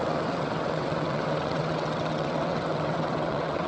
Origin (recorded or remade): remade